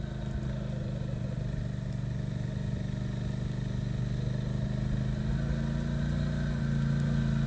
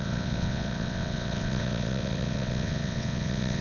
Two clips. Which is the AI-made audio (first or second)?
second